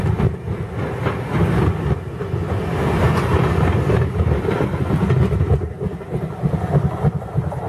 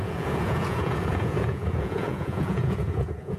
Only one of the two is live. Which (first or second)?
first